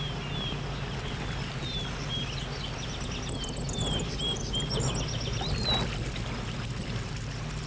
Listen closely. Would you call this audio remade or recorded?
recorded